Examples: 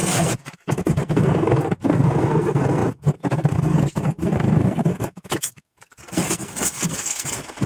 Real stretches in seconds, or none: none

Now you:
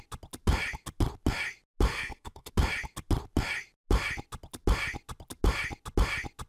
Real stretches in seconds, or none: 0.0-1.9; 2.5-6.5

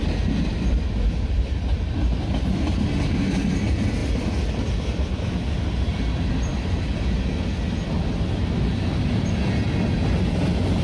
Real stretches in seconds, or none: 0.0-10.8